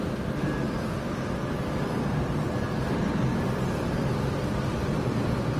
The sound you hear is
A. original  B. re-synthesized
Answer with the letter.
A